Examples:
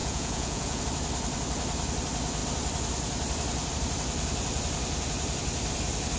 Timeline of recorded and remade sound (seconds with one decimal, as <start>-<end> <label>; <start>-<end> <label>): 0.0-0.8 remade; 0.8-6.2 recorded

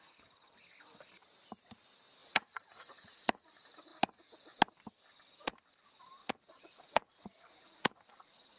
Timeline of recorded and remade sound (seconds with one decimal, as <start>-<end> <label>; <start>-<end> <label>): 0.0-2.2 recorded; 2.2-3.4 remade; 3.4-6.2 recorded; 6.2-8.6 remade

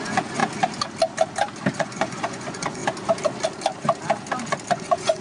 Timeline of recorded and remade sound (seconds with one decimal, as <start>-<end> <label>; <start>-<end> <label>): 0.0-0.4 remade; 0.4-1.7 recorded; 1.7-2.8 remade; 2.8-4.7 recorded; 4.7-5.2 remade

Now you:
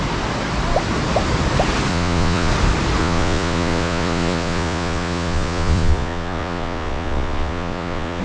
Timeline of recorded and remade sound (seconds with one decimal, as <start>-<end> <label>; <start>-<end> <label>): 0.0-1.9 recorded; 1.9-2.5 remade; 2.5-3.0 recorded; 3.0-8.2 remade

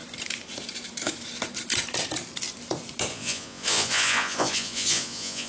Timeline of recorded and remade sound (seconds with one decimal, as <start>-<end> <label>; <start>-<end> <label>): 0.0-3.1 recorded; 3.1-5.5 remade

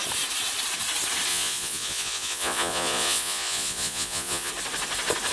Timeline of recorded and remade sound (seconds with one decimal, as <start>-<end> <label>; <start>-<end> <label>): 0.0-1.3 recorded; 1.3-4.5 remade; 4.5-5.3 recorded